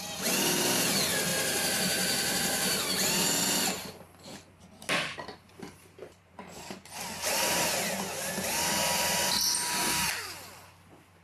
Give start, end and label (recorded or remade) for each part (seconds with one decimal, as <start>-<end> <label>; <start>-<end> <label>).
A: 0.0-1.3 recorded; 1.3-2.8 remade; 2.8-5.5 recorded; 5.5-7.6 remade; 7.6-11.2 recorded